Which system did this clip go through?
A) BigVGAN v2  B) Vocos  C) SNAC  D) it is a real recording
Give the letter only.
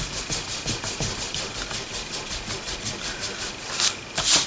D